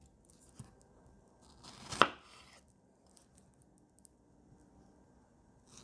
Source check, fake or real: real